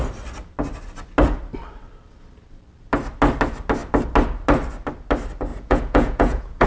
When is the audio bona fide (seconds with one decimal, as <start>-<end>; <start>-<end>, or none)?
0.0-5.5